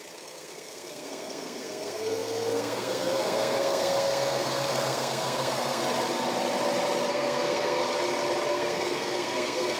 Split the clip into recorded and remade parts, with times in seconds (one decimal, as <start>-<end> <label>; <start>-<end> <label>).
0.0-5.8 remade; 5.8-7.1 recorded; 7.1-7.8 remade; 7.8-8.5 recorded; 8.5-9.8 remade